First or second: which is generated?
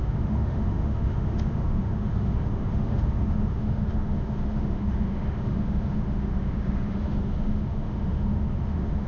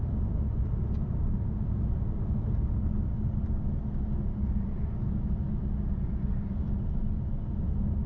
first